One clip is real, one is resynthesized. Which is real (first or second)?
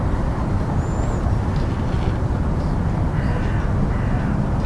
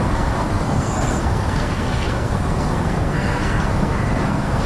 first